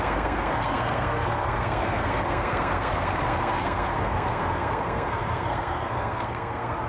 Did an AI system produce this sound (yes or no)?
yes